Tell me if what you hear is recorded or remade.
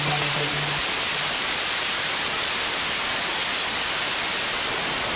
recorded